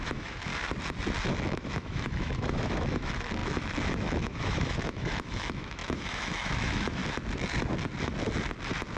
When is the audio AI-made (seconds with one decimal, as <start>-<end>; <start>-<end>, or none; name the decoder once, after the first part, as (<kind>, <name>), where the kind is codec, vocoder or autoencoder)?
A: 0.0-0.5 (autoencoder, DAC-VAE); 1.3-7.0